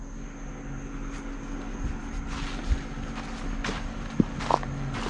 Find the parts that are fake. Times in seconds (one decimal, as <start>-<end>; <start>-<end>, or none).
none

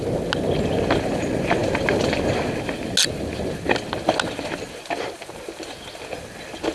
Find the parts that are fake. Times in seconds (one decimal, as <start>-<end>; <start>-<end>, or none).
none

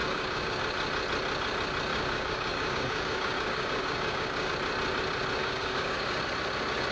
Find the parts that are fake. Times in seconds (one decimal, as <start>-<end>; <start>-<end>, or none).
0.0-0.6; 1.9-4.5; 5.4-6.1